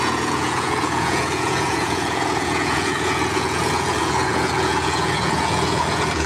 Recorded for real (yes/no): no